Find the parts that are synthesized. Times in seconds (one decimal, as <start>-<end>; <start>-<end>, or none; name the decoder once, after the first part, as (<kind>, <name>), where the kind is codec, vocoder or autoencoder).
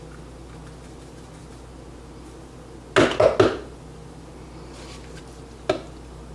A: none